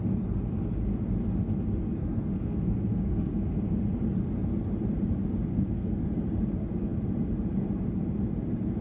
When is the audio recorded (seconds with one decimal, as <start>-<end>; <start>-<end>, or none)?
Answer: 0.0-2.0; 3.5-5.5; 6.0-8.8